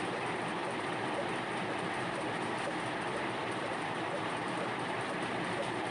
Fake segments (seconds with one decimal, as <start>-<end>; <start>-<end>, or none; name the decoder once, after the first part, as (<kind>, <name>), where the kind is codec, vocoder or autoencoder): 0.0-0.6 (vocoder, BigVGAN v2); 2.0-5.9